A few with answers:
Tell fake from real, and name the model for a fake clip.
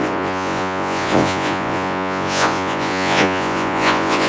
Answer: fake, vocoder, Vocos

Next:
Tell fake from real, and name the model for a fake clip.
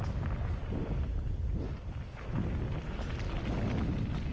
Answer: real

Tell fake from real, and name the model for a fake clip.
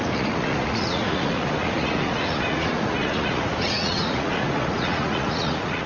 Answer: fake, vocoder, Vocos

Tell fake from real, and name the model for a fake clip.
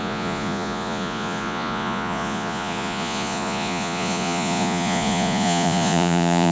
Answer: fake, vocoder, Vocos